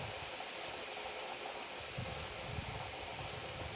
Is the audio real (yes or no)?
yes